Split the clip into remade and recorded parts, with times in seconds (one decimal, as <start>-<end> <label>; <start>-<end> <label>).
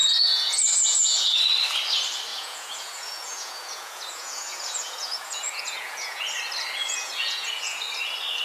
0.0-1.4 remade; 1.4-2.3 recorded; 2.3-6.2 remade; 6.2-6.8 recorded; 6.8-7.8 remade; 7.8-8.4 recorded